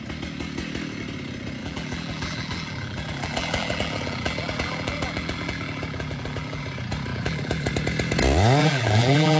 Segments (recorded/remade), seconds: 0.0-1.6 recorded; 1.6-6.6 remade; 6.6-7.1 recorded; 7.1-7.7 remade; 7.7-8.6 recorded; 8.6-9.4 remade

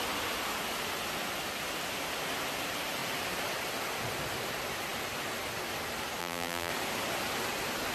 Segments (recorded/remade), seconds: 0.0-6.2 recorded; 6.2-6.7 remade; 6.7-7.9 recorded

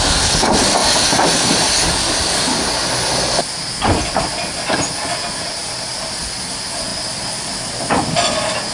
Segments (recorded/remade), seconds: 0.0-5.6 recorded; 5.6-6.1 remade; 6.1-6.9 recorded; 6.9-7.7 remade; 7.7-8.7 recorded

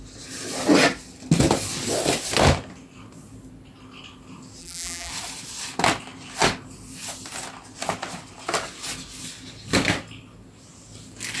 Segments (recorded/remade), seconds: 0.0-4.6 recorded; 4.6-5.1 remade; 5.1-11.4 recorded

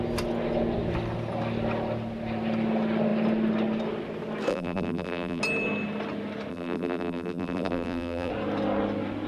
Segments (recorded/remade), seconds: 0.0-4.5 recorded; 4.5-5.4 remade; 5.4-6.5 recorded; 6.5-8.3 remade; 8.3-9.3 recorded

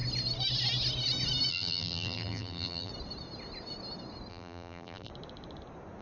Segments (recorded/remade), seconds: 0.0-1.5 recorded; 1.5-2.9 remade; 2.9-4.3 recorded; 4.3-5.1 remade; 5.1-6.0 recorded